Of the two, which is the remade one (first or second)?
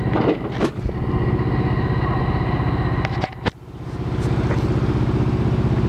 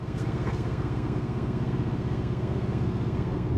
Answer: second